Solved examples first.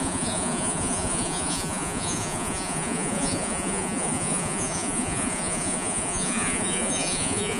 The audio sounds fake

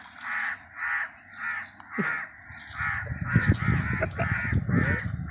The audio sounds real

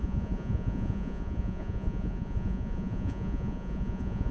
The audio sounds fake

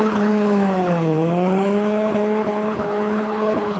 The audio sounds fake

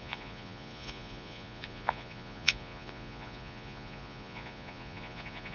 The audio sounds fake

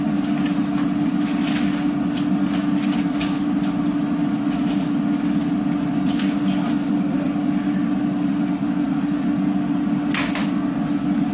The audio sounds real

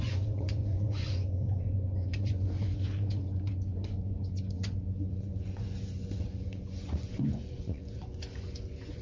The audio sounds fake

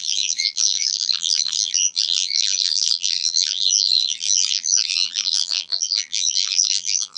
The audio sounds fake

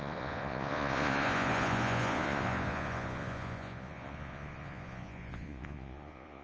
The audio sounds fake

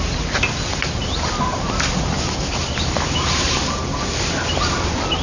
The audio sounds real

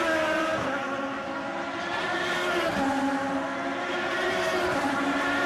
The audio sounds real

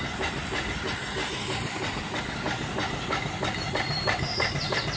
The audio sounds fake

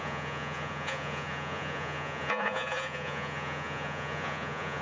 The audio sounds fake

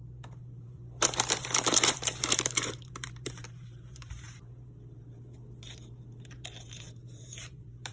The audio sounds fake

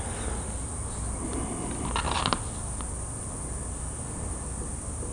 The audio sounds real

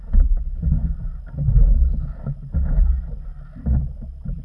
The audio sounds real